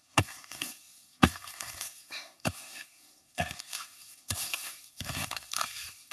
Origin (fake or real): fake